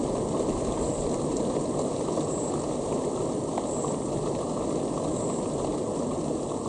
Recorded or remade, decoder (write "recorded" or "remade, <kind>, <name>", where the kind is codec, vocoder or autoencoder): recorded